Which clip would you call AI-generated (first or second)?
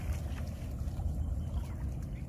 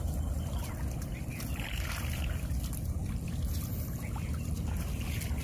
second